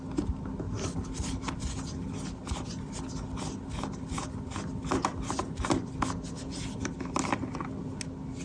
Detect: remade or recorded recorded